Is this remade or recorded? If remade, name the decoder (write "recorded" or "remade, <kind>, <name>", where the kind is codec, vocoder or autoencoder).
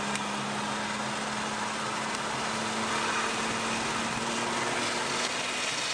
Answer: recorded